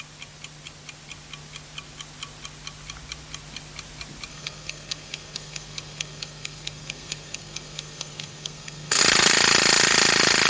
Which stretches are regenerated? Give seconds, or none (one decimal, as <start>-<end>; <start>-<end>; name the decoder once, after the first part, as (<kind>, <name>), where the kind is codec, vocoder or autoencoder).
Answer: 4.3-9.0 (codec, SNAC)